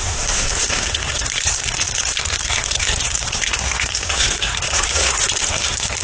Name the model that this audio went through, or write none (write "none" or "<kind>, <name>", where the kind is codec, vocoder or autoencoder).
codec, SNAC